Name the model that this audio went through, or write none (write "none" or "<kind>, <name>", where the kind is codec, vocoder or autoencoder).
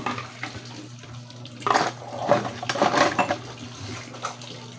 none